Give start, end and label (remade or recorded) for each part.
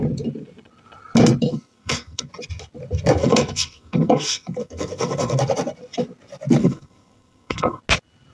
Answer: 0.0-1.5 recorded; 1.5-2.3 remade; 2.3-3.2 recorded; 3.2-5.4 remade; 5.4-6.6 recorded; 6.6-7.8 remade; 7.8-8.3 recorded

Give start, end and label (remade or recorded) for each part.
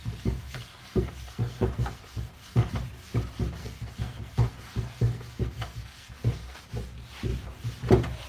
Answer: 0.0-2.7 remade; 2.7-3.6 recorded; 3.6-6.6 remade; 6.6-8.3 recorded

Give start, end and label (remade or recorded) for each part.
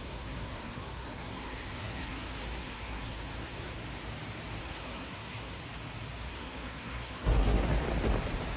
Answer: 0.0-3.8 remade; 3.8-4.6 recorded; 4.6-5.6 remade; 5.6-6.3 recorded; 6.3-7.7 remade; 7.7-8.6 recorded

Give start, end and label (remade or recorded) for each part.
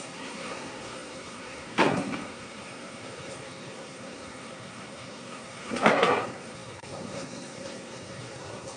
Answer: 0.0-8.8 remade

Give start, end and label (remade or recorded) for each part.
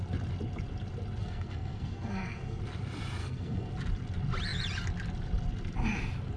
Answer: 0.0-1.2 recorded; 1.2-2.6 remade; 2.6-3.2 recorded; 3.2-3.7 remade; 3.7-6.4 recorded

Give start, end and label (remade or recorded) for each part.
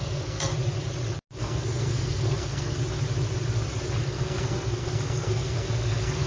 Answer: 0.0-0.5 remade; 0.5-1.4 recorded; 1.4-2.8 remade; 2.8-4.0 recorded; 4.0-6.3 remade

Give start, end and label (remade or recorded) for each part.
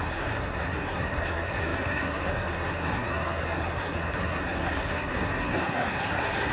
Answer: 0.0-6.5 remade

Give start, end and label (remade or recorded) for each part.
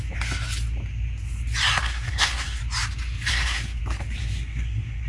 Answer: 0.0-1.8 recorded; 1.8-2.6 remade; 2.6-3.3 recorded; 3.3-3.8 remade; 3.8-4.2 recorded; 4.2-5.1 remade